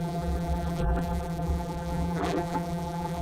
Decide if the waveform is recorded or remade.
remade